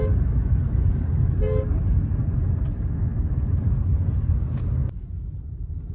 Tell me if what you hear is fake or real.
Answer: real